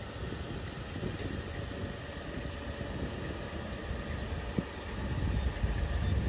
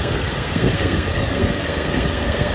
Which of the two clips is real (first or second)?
first